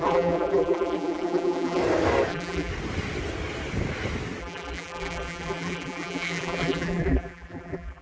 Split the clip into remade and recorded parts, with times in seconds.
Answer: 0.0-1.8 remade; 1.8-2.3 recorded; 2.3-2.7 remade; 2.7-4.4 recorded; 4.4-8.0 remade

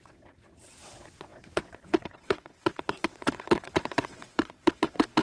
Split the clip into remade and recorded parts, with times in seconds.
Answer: 0.0-5.2 remade

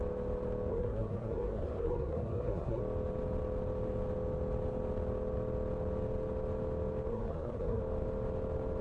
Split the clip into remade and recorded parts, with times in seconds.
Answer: 0.0-0.7 recorded; 0.7-2.8 remade; 2.8-7.1 recorded; 7.1-7.8 remade; 7.8-8.8 recorded